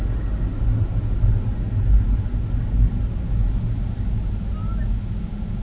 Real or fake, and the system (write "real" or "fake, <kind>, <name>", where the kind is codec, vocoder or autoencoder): real